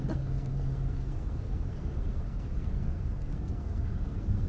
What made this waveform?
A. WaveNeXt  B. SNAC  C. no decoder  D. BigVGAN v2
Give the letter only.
B